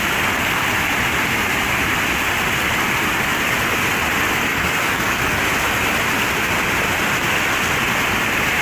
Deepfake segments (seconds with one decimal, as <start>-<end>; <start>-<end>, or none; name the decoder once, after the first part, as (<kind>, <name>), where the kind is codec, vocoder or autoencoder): 4.5-5.4 (codec, DAC)